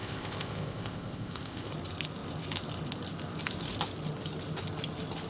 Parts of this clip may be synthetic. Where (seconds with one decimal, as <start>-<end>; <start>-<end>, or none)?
0.0-1.7